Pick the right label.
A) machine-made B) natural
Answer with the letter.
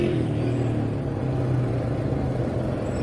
B